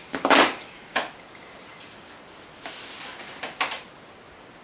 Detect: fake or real real